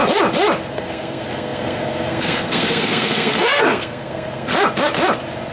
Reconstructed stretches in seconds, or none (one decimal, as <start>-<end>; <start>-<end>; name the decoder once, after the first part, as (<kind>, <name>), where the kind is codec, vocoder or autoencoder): 0.7-4.5 (codec, SNAC)